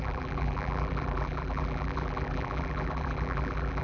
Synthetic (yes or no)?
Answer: yes